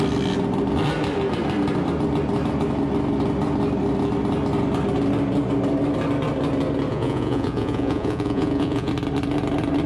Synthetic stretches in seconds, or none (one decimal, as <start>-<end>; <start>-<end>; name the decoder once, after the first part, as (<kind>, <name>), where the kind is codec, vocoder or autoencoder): 6.9-8.9 (vocoder, Vocos)